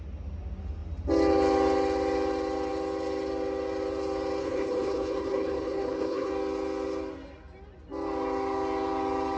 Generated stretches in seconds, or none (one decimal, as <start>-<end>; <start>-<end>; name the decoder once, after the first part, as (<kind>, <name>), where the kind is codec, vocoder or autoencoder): 4.4-6.3 (codec, HILCodec)